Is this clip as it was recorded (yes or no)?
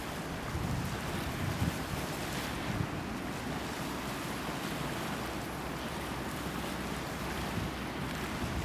yes